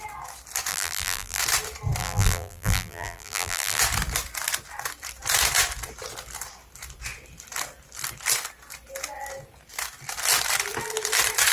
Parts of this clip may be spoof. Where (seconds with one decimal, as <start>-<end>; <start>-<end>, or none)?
0.7-1.4; 2.0-3.8